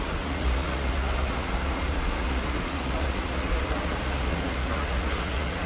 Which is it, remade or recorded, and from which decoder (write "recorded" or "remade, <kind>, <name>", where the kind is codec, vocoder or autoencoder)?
remade, vocoder, Vocos